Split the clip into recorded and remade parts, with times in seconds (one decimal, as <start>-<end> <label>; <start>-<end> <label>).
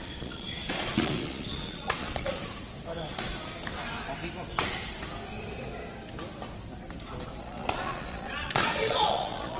0.0-2.4 remade; 2.4-7.4 recorded; 7.4-9.6 remade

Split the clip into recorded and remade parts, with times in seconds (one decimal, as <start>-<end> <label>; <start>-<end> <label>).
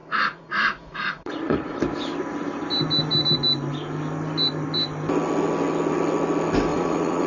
0.0-1.8 remade; 1.8-6.7 recorded; 6.7-7.3 remade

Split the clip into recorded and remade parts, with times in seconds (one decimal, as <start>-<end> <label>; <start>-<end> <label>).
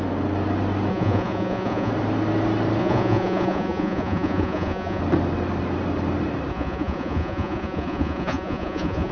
0.0-0.9 recorded; 0.9-1.9 remade; 1.9-2.8 recorded; 2.8-5.0 remade; 5.0-6.5 recorded; 6.5-9.1 remade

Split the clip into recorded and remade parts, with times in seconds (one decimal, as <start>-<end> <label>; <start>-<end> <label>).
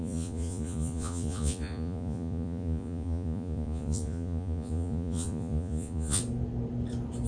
0.0-6.2 remade; 6.2-7.3 recorded